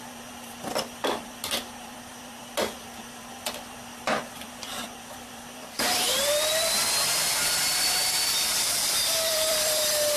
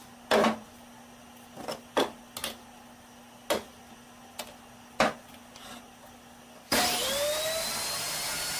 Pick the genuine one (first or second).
second